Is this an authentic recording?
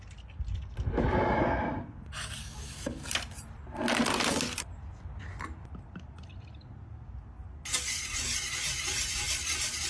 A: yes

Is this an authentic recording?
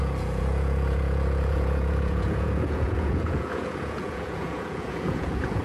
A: no